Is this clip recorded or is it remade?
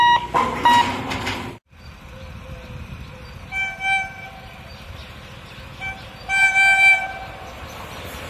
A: recorded